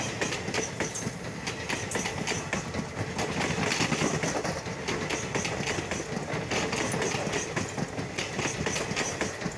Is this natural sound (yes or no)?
yes